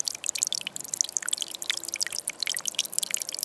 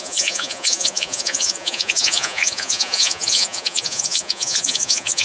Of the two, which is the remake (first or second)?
second